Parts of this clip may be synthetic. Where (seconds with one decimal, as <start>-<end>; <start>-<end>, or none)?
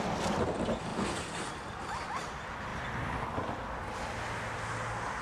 none